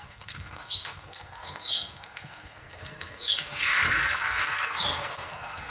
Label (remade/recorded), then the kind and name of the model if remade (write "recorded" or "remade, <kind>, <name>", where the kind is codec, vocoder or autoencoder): remade, codec, SNAC